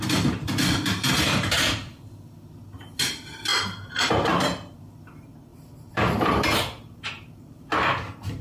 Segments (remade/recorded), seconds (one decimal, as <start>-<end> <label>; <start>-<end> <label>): 0.0-5.5 recorded; 5.5-7.8 remade; 7.8-8.4 recorded